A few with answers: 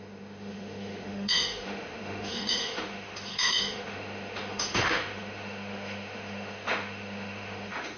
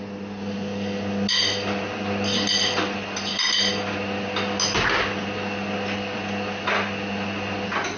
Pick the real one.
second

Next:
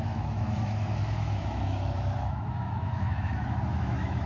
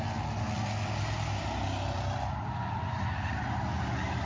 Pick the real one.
second